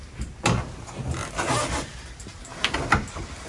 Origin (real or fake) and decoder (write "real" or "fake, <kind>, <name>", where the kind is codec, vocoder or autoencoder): real